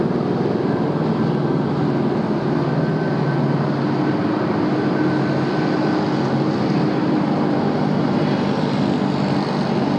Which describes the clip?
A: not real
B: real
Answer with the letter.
B